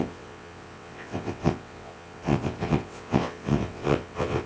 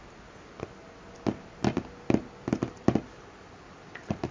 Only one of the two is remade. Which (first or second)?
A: first